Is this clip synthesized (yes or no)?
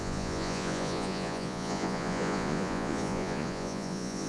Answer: yes